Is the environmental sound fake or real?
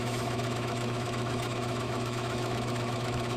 fake